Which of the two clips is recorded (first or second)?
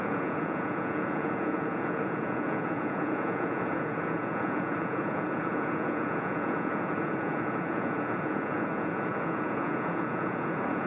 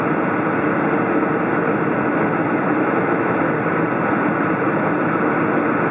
second